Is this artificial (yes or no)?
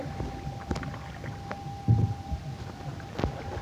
no